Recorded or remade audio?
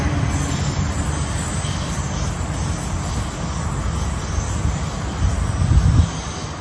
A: recorded